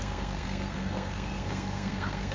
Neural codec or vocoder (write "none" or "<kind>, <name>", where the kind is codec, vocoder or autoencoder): codec, SNAC